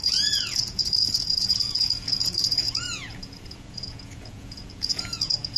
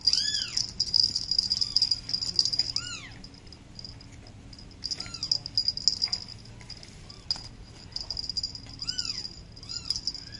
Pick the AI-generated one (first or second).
first